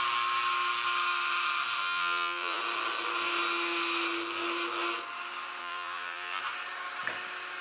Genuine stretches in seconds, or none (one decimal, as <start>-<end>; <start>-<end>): 0.0-1.8; 2.6-5.6; 6.4-7.6